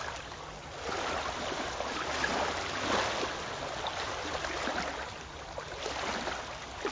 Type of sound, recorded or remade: recorded